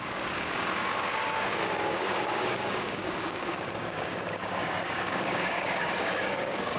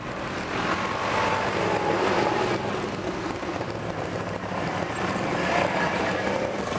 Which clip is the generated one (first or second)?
first